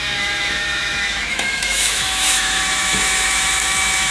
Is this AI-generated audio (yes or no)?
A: yes